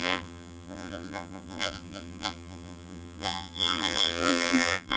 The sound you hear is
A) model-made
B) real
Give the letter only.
A